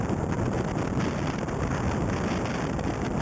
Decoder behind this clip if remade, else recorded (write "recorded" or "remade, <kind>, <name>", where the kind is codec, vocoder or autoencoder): recorded